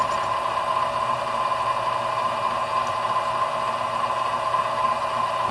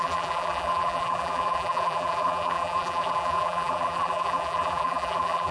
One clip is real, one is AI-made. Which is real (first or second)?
first